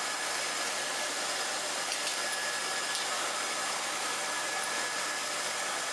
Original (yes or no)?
yes